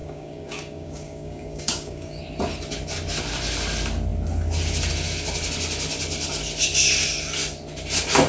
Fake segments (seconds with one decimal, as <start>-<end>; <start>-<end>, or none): 0.0-2.2